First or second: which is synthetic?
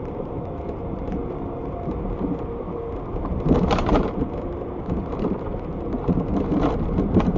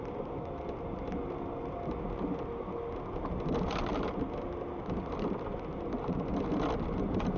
first